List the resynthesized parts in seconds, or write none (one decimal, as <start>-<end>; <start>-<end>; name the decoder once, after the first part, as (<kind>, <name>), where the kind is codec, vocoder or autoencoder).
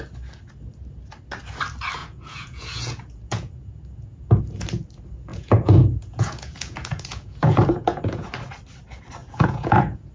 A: 2.0-4.4 (vocoder, Vocos); 5.3-8.3; 9.2-10.1